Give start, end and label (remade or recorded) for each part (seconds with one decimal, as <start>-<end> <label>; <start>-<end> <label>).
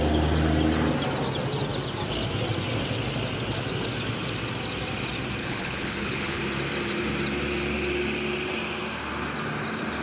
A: 0.0-5.4 recorded; 5.4-6.4 remade; 6.4-10.0 recorded